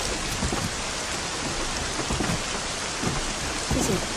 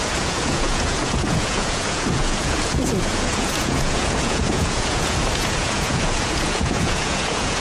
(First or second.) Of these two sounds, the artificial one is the second